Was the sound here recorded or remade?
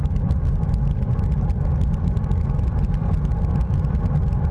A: recorded